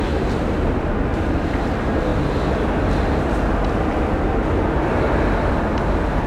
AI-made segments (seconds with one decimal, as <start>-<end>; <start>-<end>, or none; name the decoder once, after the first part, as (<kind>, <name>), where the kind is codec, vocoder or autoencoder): 1.1-1.7 (vocoder, BigVGAN v2)